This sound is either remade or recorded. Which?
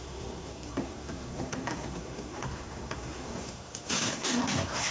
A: remade